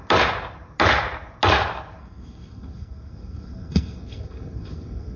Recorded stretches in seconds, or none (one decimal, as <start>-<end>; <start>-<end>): 0.0-2.0